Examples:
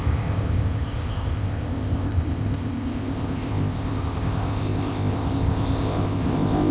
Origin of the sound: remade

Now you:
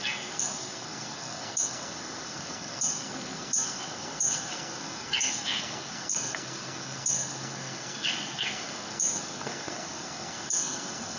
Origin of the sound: remade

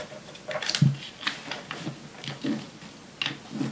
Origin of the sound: recorded